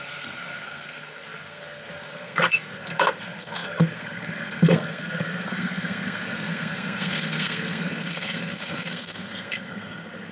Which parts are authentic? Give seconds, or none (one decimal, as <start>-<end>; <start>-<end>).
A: none